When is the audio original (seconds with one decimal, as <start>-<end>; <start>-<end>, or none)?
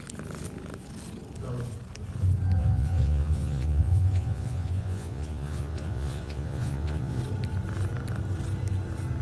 0.0-2.6; 7.2-9.2